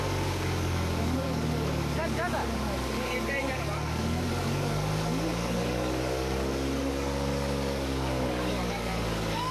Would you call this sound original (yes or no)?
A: no